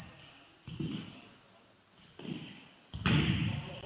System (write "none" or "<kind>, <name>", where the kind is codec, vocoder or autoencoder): none